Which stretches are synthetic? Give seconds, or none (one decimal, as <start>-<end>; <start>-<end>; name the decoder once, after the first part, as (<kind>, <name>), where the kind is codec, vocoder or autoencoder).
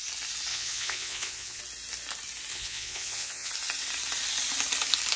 0.5-1.6 (vocoder, Vocos); 2.5-3.5